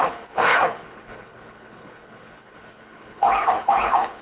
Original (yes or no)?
no